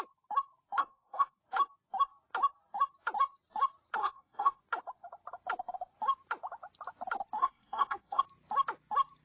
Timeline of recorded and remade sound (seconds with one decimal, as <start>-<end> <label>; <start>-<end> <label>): 0.0-0.8 recorded; 0.8-1.4 remade; 1.4-4.0 recorded; 4.0-4.6 remade; 4.6-7.4 recorded; 7.4-8.2 remade; 8.2-9.2 recorded